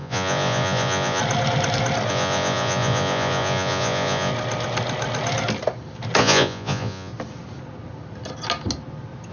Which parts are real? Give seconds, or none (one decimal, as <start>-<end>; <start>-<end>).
1.2-2.1; 4.3-6.2; 7.1-9.3